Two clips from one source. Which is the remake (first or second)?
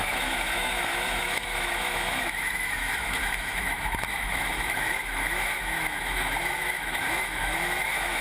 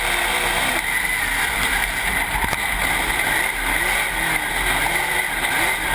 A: first